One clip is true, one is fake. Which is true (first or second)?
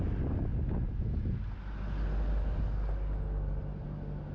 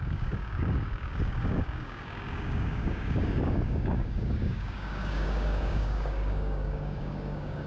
first